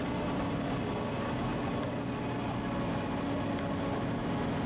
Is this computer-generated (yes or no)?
no